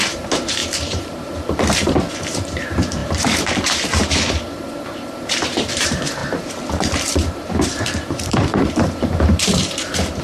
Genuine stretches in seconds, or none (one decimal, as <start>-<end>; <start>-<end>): none